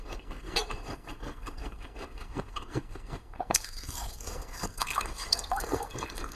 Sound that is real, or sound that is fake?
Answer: fake